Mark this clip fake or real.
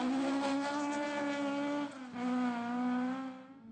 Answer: real